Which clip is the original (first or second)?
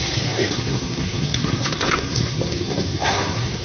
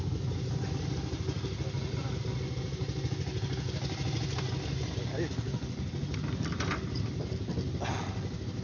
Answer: second